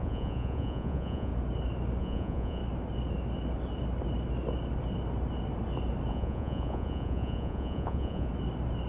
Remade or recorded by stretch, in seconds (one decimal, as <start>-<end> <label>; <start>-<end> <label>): 0.0-1.3 remade; 1.3-2.0 recorded; 2.0-2.6 remade; 2.6-6.1 recorded; 6.1-8.3 remade; 8.3-8.9 recorded